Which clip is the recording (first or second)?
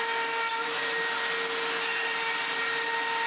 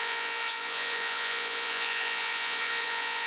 first